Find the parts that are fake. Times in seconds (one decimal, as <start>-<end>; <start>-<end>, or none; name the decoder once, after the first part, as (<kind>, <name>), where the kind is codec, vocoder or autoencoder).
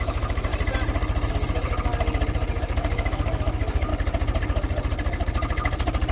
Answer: 0.0-0.5 (autoencoder, DAC-VAE); 1.3-1.9; 2.6-3.9